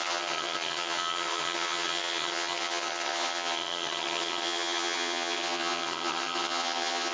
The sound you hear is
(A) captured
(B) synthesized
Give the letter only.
B